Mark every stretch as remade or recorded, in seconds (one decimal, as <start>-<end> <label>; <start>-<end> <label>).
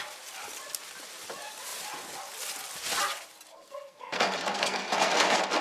0.0-3.5 recorded; 3.5-5.6 remade